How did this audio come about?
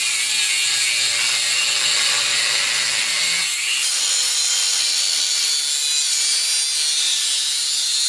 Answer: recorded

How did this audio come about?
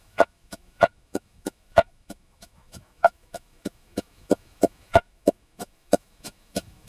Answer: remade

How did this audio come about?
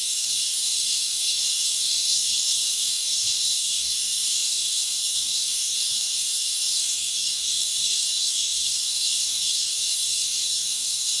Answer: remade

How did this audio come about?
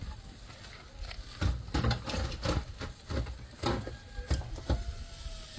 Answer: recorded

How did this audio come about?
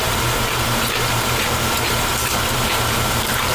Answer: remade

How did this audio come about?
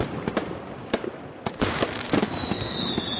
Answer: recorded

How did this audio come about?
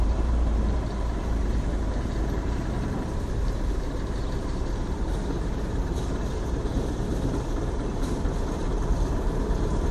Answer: remade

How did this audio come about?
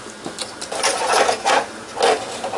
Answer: recorded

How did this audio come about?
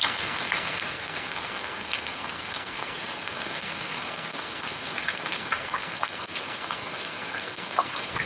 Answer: remade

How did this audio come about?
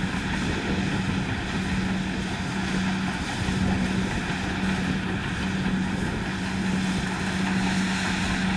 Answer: recorded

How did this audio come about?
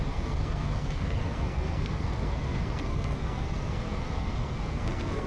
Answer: remade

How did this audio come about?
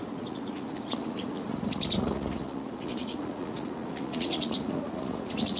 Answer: remade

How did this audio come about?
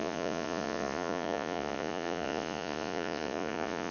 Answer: remade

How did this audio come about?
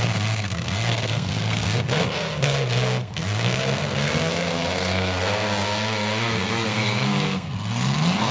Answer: remade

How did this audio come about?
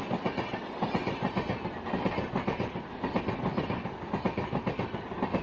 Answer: recorded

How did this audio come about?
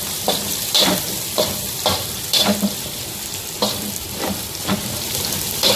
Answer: remade